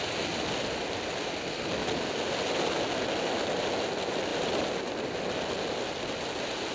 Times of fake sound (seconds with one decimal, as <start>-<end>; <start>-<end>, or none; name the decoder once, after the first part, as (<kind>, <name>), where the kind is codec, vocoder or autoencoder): none